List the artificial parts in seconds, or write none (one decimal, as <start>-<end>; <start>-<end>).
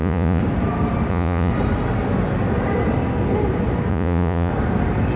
0.0-0.4; 1.1-1.5; 3.9-4.5